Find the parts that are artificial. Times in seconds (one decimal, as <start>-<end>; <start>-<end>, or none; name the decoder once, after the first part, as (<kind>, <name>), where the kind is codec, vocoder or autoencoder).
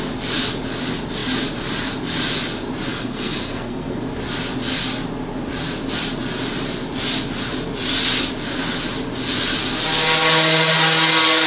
2.9-4.0 (codec, SNAC)